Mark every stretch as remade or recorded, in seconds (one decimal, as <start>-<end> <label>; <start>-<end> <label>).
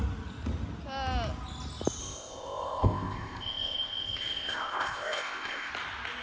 0.0-2.0 recorded; 2.0-5.7 remade; 5.7-6.2 recorded